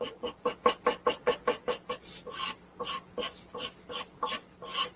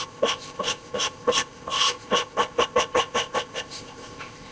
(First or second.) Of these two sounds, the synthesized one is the second